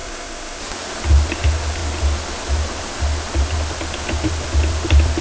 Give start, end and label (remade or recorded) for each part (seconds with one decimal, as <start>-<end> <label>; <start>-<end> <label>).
0.0-0.6 remade; 0.6-5.2 recorded